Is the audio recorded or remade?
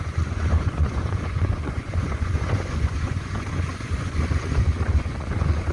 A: remade